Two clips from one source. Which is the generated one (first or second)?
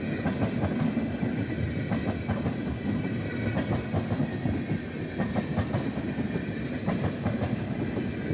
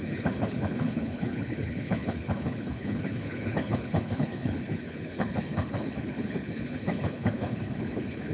second